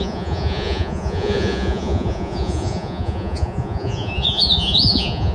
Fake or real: fake